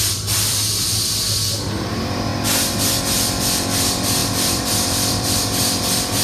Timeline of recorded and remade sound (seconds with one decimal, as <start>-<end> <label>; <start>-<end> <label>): 0.0-2.3 remade; 2.3-3.0 recorded; 3.0-6.2 remade